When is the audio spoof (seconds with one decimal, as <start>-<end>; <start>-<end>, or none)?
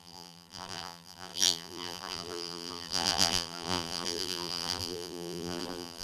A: 0.0-6.0